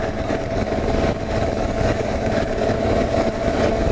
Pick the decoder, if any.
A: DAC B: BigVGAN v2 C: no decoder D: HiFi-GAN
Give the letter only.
A